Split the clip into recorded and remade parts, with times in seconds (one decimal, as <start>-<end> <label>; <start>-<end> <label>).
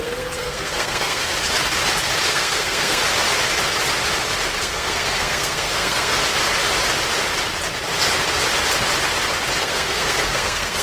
0.0-1.3 remade; 1.3-2.3 recorded; 2.3-3.0 remade; 3.0-4.6 recorded; 4.6-6.2 remade; 6.2-9.6 recorded; 9.6-10.8 remade